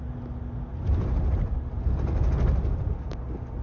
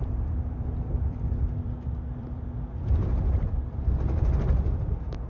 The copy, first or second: second